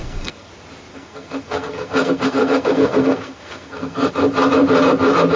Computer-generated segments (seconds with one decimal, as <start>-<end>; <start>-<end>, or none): 0.0-0.5; 0.9-4.1